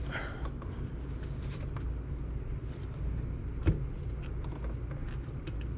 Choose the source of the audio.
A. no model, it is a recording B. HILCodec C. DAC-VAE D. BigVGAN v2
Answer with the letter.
A